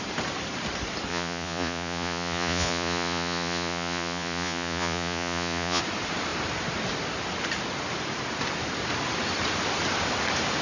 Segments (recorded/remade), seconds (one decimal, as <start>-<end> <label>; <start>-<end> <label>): 0.0-1.1 recorded; 1.1-5.8 remade; 5.8-10.6 recorded